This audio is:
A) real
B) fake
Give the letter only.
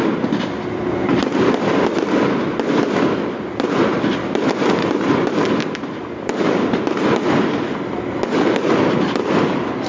A